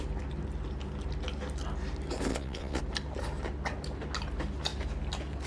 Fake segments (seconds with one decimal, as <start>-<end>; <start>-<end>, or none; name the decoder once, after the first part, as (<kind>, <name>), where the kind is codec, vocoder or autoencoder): 2.3-2.8 (vocoder, WaveNeXt)